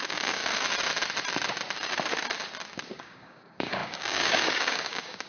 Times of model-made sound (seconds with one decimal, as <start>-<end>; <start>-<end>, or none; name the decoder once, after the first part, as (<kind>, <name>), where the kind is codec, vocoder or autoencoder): 0.0-0.4 (codec, DAC); 3.0-5.3